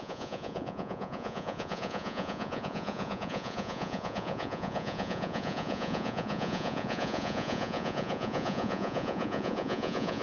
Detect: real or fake fake